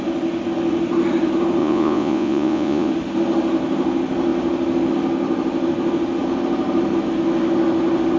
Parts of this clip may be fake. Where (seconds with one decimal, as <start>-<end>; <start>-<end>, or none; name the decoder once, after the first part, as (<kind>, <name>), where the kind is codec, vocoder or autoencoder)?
1.6-2.9 (vocoder, Vocos)